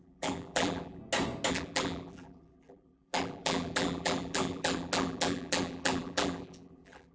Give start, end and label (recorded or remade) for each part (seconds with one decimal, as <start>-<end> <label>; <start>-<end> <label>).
0.0-1.0 remade; 1.0-1.5 recorded; 1.5-7.1 remade

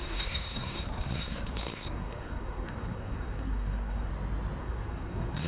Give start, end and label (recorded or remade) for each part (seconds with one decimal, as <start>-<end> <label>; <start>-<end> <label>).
0.0-4.1 remade; 4.1-4.6 recorded; 4.6-5.5 remade

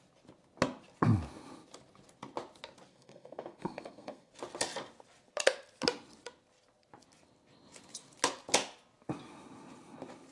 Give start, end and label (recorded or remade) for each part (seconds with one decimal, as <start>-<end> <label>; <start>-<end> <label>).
0.0-2.9 recorded; 2.9-4.3 remade; 4.3-10.3 recorded